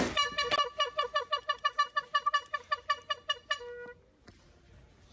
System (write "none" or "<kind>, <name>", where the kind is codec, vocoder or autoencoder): none